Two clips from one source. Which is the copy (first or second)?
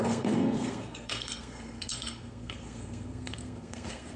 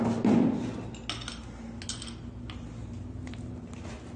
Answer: first